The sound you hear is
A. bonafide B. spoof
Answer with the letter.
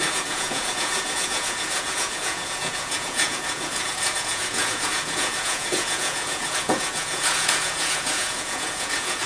B